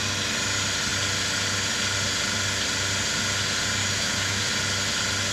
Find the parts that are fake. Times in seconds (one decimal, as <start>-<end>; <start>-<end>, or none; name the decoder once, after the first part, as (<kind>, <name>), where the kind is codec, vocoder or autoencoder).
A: 3.8-4.5 (autoencoder, DAC-VAE)